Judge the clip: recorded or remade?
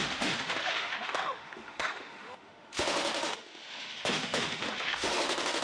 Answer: remade